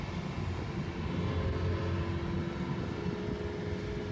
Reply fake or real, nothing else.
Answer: real